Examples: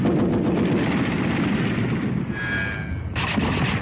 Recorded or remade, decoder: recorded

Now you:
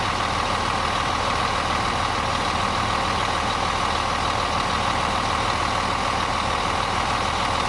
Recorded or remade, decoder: recorded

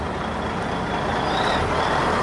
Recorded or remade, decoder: recorded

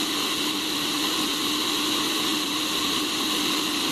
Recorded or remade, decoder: recorded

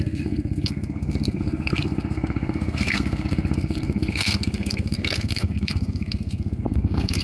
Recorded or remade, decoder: remade, codec, SNAC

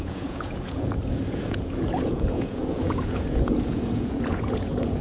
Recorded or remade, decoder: remade, vocoder, Vocos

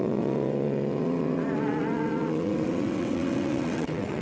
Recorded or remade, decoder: remade, vocoder, WaveNeXt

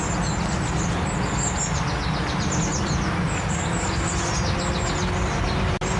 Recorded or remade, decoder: recorded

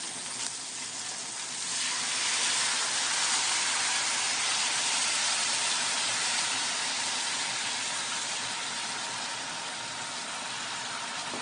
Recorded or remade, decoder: recorded